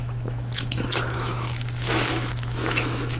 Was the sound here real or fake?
fake